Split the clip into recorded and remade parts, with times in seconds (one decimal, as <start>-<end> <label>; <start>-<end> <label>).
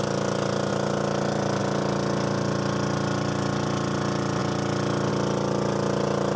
0.0-6.4 recorded